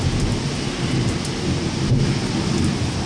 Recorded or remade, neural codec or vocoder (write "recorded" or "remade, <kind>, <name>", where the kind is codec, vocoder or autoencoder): recorded